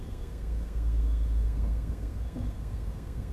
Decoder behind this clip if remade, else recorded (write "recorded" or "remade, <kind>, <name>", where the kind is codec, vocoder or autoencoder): remade, codec, SNAC